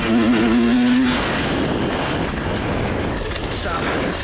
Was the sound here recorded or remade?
recorded